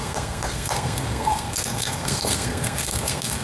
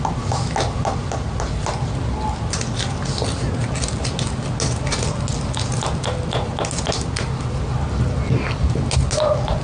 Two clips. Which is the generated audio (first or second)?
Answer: first